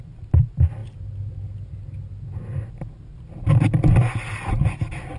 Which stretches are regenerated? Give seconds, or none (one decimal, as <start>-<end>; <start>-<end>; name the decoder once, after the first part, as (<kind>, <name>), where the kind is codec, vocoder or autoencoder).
none